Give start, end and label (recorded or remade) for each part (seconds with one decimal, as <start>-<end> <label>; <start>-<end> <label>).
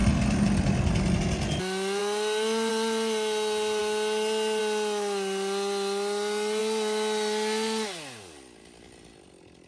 0.0-9.7 recorded